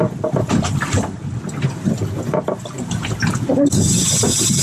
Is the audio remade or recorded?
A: recorded